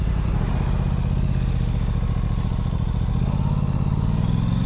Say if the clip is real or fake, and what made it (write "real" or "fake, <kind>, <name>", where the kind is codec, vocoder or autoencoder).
real